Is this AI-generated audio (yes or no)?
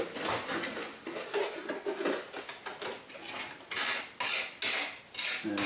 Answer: no